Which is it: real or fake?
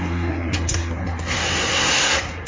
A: fake